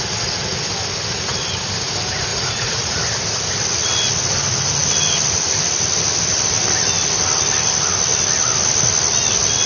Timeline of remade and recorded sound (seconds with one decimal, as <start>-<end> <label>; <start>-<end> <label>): 0.0-2.3 recorded; 2.3-3.0 remade; 3.0-9.7 recorded